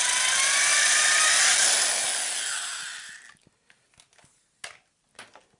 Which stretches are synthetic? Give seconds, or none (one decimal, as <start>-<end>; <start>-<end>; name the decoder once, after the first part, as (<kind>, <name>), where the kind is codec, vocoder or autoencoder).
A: none